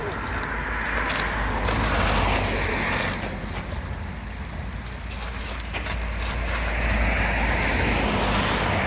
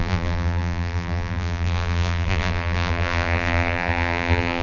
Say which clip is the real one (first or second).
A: first